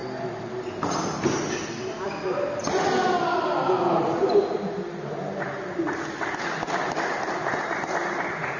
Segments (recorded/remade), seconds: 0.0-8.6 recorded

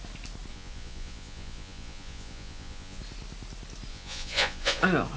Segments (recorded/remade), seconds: 0.0-0.5 recorded; 0.5-3.0 remade; 3.0-3.9 recorded; 3.9-4.8 remade; 4.8-5.2 recorded